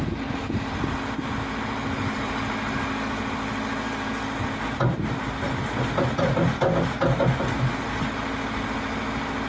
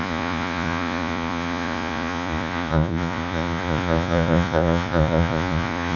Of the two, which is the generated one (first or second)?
second